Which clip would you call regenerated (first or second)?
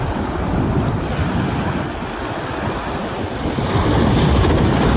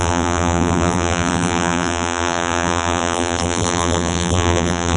second